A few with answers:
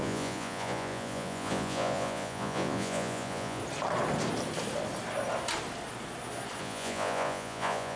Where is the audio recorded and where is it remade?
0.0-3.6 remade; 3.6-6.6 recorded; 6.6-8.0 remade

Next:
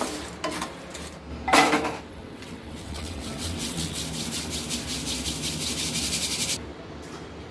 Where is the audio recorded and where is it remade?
0.0-2.1 recorded; 2.1-4.0 remade; 4.0-7.5 recorded